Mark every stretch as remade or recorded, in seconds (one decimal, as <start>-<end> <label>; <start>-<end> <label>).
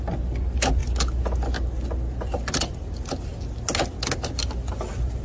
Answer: 0.0-5.2 recorded